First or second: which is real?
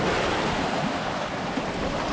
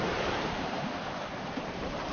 first